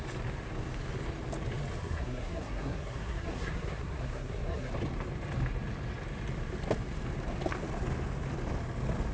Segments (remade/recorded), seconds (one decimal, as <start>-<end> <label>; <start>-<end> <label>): 0.0-1.8 recorded; 1.8-4.7 remade; 4.7-9.1 recorded